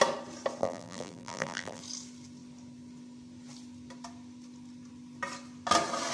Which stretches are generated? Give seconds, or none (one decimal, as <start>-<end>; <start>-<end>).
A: 0.6-1.8

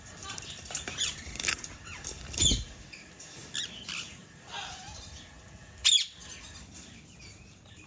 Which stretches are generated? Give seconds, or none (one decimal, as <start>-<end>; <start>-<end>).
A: 0.0-3.4; 4.2-6.2; 7.1-7.9